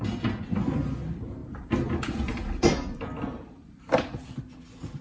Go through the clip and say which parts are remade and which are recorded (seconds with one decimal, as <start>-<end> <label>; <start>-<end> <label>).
0.0-5.0 recorded